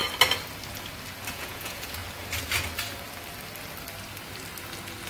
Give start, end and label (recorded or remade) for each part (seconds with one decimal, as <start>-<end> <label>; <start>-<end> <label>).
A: 0.0-1.3 recorded; 1.3-2.0 remade; 2.0-5.1 recorded